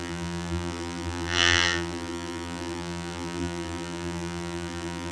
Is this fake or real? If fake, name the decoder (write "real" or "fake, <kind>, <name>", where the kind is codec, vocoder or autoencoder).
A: fake, vocoder, BigVGAN v2